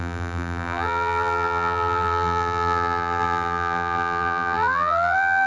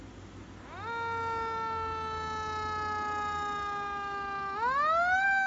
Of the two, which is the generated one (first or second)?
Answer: first